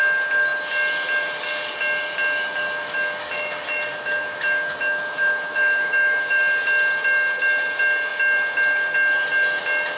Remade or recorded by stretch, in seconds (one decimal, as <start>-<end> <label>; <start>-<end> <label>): 0.0-2.8 recorded; 2.8-6.4 remade; 6.4-10.0 recorded